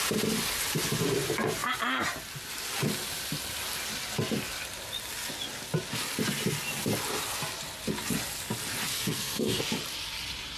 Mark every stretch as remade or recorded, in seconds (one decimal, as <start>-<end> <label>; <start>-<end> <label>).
0.0-8.9 recorded; 8.9-9.6 remade; 9.6-10.6 recorded